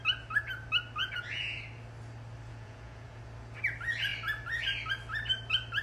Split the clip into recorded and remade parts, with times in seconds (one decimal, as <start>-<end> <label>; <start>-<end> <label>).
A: 0.0-1.0 recorded; 1.0-1.6 remade; 1.6-2.5 recorded; 2.5-3.2 remade; 3.2-5.8 recorded